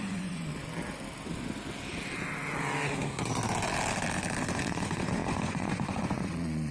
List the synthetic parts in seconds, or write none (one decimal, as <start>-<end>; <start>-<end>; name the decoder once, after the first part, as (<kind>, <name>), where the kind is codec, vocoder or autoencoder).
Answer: 0.0-0.5 (vocoder, Vocos); 4.5-6.7